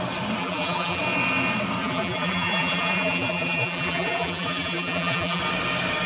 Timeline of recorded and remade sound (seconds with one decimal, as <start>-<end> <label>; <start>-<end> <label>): 0.0-0.4 recorded; 0.4-1.0 remade; 1.0-1.8 recorded; 1.8-5.4 remade; 5.4-6.1 recorded